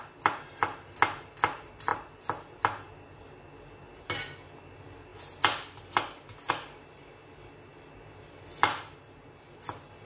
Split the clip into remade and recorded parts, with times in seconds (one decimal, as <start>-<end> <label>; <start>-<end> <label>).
0.0-10.0 recorded